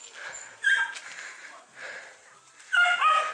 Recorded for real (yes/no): yes